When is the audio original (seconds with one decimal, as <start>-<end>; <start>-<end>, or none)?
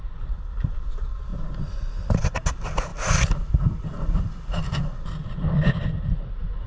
0.0-5.2; 6.0-6.7